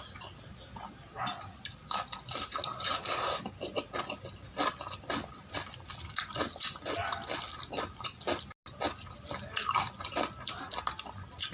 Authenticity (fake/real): real